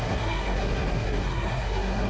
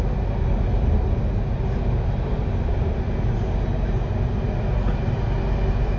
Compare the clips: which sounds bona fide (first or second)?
second